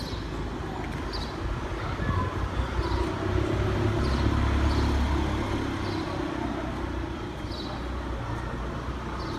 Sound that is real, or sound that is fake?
real